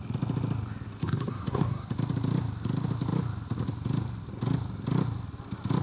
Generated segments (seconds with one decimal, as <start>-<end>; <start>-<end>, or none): 1.0-1.9